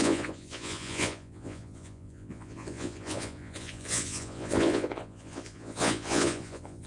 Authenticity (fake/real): fake